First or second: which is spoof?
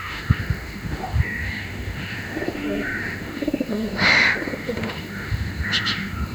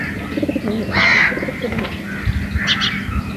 first